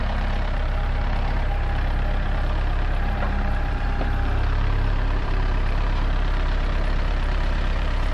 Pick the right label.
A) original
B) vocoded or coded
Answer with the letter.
B